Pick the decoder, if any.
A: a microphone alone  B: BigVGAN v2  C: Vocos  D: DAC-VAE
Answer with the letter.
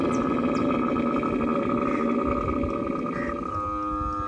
A